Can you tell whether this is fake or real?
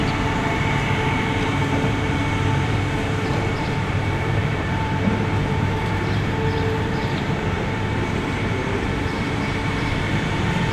fake